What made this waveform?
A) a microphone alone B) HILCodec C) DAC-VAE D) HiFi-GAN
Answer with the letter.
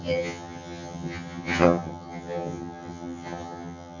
D